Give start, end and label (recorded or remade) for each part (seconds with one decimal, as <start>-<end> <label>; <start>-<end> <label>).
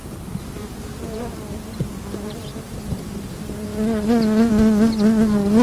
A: 0.0-3.3 remade; 3.3-5.6 recorded